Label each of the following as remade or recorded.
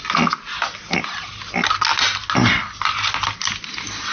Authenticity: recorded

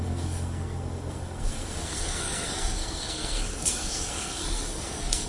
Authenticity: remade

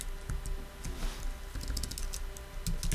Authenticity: recorded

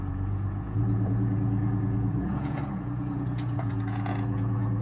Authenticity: remade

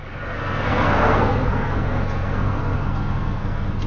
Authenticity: remade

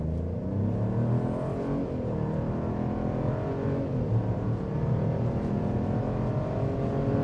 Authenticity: recorded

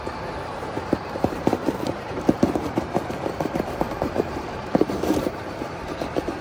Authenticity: remade